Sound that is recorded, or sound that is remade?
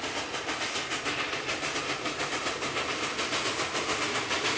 recorded